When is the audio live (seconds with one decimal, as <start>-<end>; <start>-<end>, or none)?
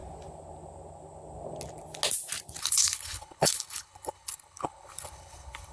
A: 0.0-2.6